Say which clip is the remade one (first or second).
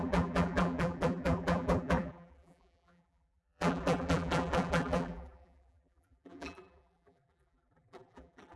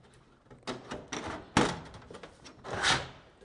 first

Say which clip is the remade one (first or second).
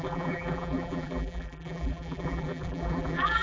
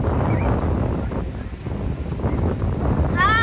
first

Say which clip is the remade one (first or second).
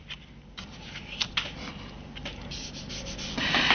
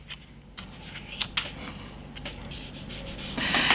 first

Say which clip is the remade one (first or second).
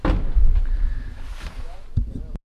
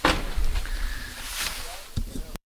second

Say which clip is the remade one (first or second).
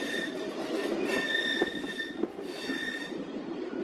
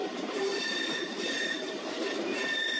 second